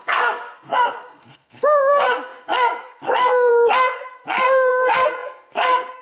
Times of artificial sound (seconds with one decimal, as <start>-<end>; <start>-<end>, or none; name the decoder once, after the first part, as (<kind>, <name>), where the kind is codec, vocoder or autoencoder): 0.0-6.0 (codec, SNAC)